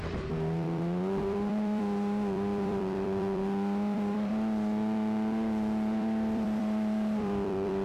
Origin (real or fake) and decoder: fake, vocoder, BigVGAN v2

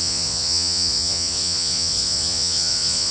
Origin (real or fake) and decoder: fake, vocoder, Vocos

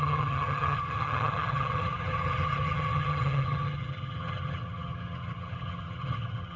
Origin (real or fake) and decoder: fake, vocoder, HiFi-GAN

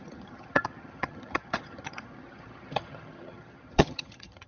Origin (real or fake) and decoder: fake, vocoder, HiFi-GAN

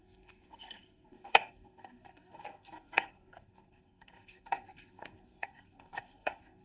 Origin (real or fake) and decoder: fake, codec, SNAC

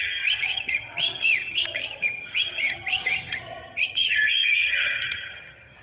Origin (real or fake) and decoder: fake, vocoder, HiFi-GAN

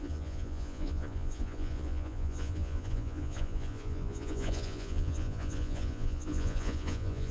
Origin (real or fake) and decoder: fake, vocoder, Vocos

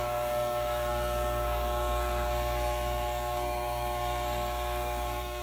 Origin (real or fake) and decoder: fake, codec, SNAC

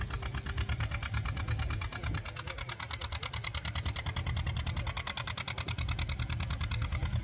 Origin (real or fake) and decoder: real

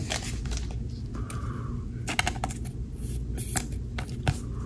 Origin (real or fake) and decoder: real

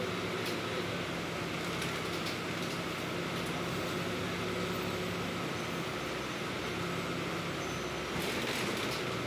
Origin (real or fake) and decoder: real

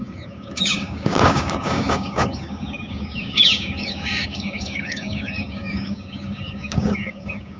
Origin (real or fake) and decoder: fake, codec, DAC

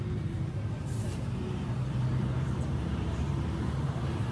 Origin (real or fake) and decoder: fake, vocoder, BigVGAN v2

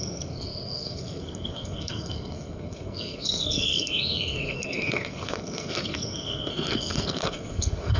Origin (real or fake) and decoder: fake, codec, SNAC